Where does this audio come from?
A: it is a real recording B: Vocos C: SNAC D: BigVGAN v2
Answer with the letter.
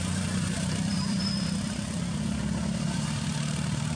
D